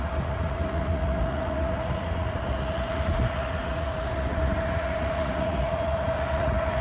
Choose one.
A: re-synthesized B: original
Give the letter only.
A